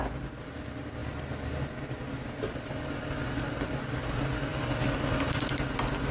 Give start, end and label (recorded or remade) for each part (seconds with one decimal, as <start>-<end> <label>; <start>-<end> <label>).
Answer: 0.0-6.1 recorded